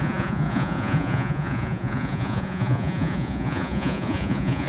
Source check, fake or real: fake